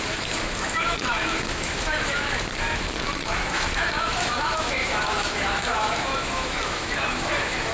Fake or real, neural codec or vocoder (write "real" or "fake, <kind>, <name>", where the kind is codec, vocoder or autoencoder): fake, autoencoder, DAC-VAE